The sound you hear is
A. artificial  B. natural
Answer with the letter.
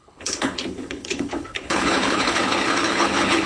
A